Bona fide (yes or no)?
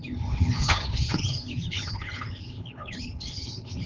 no